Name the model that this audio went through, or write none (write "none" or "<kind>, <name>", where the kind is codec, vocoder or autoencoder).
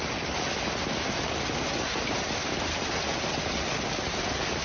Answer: none